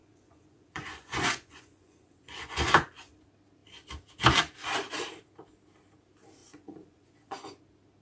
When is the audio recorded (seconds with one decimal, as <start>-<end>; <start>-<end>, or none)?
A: 3.1-6.4; 7.6-8.0